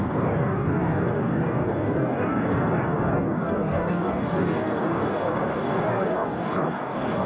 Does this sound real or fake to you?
fake